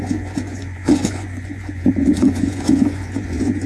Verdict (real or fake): fake